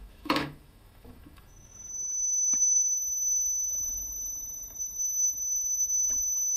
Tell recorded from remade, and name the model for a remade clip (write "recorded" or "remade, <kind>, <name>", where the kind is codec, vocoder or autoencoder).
remade, autoencoder, DAC-VAE